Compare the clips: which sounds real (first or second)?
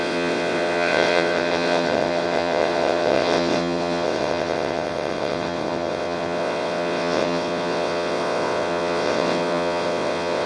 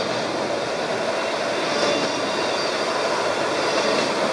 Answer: second